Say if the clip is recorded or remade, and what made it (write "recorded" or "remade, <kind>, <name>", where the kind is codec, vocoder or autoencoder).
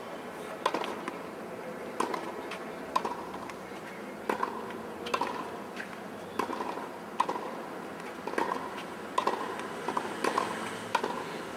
recorded